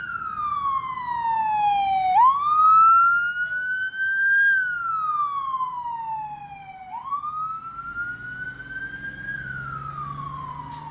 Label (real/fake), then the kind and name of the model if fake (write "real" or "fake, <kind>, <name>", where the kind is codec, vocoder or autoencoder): real